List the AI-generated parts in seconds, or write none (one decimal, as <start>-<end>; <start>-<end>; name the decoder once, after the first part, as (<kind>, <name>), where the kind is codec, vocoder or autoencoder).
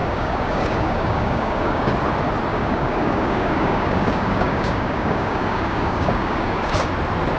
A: 0.0-1.9 (codec, DAC); 2.5-6.9